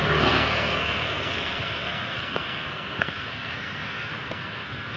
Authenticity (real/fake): fake